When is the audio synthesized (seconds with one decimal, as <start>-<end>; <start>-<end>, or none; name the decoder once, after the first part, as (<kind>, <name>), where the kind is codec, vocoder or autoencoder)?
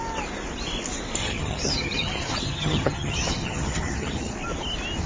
1.2-4.3 (vocoder, HiFi-GAN)